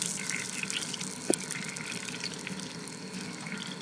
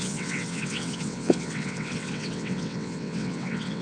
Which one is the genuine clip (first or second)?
first